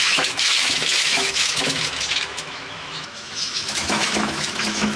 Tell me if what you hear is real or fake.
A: fake